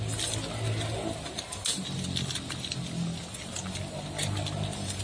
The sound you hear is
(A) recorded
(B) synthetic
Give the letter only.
A